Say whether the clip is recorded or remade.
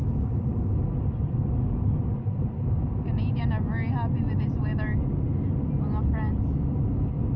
recorded